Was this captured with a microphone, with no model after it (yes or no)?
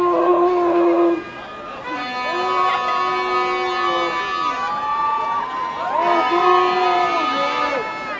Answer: yes